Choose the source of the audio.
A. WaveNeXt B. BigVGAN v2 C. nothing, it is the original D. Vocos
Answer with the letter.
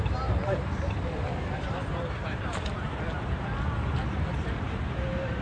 B